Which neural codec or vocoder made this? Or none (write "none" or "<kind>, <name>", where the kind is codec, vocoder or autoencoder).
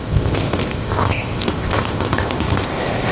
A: codec, ZipCodec